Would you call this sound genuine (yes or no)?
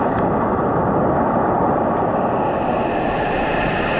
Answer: yes